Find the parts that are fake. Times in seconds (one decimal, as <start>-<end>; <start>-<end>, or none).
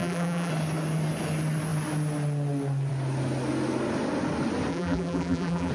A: 0.0-0.5; 4.7-5.7